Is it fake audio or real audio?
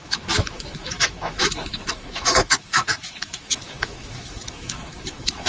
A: fake